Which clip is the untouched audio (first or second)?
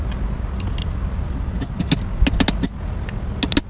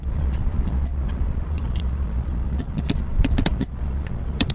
first